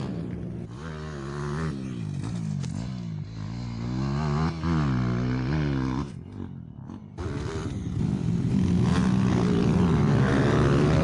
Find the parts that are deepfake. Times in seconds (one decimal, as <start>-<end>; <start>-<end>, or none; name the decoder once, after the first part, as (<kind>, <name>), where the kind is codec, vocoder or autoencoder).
none